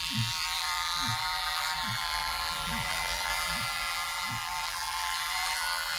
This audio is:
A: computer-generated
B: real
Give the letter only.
A